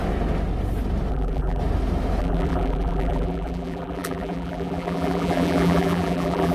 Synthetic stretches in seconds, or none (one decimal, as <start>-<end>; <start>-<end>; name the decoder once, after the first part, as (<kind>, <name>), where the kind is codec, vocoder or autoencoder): 1.1-1.6 (vocoder, BigVGAN v2); 2.2-6.5